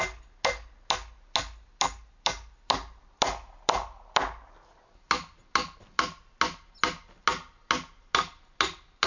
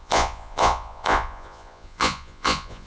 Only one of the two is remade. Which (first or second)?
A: second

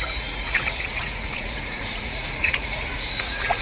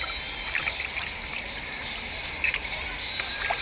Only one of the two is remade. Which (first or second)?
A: first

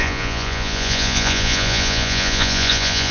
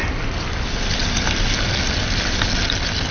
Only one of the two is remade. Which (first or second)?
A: first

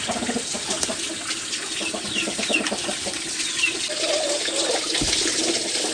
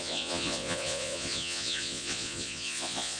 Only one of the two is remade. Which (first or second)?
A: second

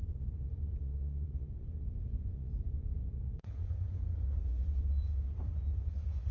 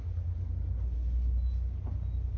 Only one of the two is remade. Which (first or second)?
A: first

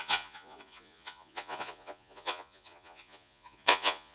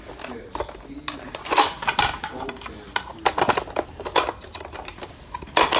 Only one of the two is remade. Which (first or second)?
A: first